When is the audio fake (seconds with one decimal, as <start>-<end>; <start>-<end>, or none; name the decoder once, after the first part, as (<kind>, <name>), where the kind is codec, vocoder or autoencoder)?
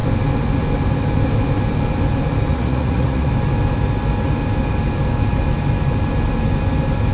2.5-3.3 (vocoder, Vocos)